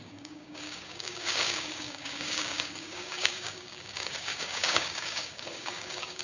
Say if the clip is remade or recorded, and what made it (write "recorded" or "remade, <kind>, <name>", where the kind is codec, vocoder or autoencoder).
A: remade, codec, DAC